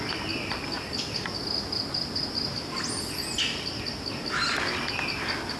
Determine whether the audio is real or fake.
real